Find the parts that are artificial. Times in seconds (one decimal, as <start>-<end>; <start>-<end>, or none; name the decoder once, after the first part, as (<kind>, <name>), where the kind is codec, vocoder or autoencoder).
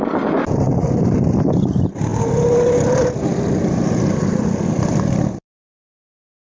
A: 2.1-5.9 (vocoder, BigVGAN v2)